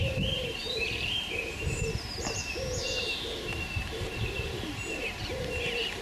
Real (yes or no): no